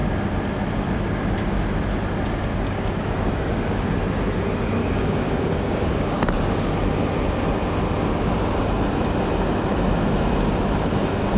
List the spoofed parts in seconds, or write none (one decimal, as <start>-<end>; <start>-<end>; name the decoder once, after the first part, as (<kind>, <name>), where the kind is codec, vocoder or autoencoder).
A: 2.5-3.6 (codec, DAC); 4.8-6.7